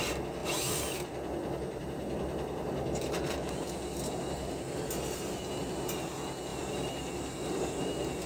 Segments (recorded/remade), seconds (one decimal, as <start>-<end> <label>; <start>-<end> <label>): 0.0-0.4 recorded; 0.4-4.9 remade; 4.9-6.5 recorded; 6.5-7.8 remade; 7.8-8.3 recorded